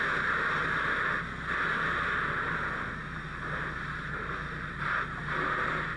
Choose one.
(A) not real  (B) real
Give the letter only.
B